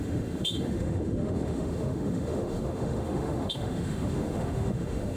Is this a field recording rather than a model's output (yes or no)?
no